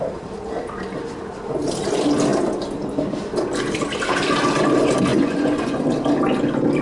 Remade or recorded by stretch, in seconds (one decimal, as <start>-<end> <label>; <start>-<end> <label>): 0.0-5.1 recorded; 5.1-5.8 remade; 5.8-6.8 recorded